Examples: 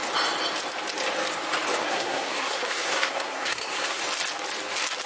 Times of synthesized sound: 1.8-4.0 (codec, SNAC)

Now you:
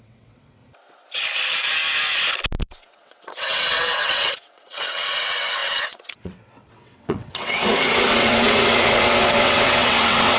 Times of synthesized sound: 0.0-0.6 (vocoder, WaveNeXt); 2.6-10.4

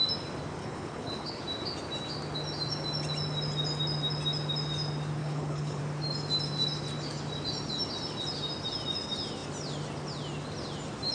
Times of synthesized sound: 0.6-1.4 (codec, HILCodec); 5.2-5.8

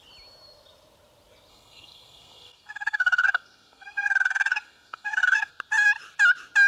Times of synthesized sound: 1.5-5.5 (codec, SNAC)